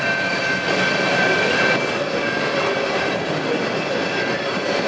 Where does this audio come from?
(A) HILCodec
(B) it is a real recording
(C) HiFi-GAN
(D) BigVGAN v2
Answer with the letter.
B